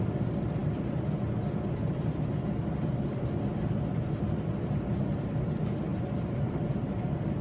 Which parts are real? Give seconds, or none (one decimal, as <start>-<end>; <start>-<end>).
0.0-5.9